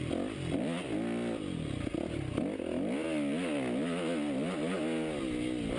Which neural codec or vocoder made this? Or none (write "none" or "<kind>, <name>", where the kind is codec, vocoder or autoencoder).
none